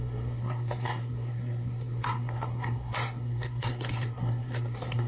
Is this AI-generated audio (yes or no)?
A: yes